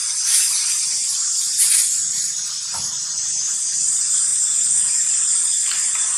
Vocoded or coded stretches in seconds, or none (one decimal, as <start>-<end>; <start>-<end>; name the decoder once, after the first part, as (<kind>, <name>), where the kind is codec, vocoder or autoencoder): 0.0-4.3 (vocoder, BigVGAN v2); 5.3-6.2

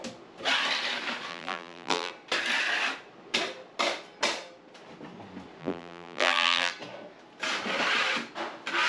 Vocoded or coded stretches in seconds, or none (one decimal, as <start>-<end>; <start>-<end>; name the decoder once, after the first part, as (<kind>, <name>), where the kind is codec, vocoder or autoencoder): 1.3-2.1 (vocoder, BigVGAN v2); 5.6-6.7

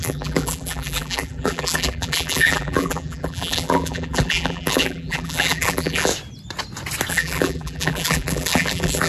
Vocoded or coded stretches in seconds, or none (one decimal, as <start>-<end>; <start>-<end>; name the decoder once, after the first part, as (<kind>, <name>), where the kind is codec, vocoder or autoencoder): 0.0-6.1 (vocoder, BigVGAN v2); 7.1-9.1